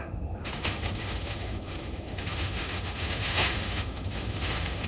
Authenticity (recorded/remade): remade